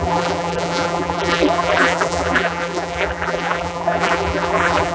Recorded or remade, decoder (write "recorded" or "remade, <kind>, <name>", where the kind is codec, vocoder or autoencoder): remade, vocoder, BigVGAN v2